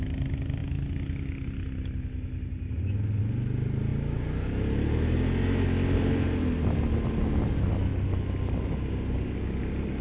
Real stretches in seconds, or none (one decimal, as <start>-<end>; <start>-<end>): 0.0-10.0